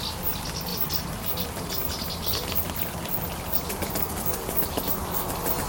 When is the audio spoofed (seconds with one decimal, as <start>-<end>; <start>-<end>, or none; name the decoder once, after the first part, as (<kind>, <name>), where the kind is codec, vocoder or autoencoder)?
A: none